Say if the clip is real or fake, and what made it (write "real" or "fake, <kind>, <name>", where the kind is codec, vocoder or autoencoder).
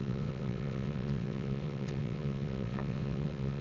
fake, vocoder, WaveNeXt